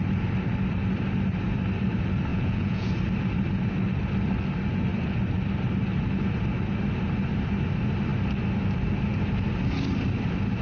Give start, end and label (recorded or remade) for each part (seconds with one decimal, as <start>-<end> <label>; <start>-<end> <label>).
0.0-2.3 recorded; 2.3-2.9 remade; 2.9-10.6 recorded